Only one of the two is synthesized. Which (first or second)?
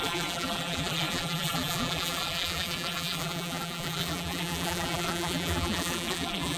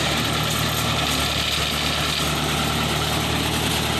first